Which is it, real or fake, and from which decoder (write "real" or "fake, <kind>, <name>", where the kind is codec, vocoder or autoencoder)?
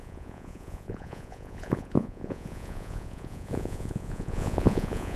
fake, vocoder, Vocos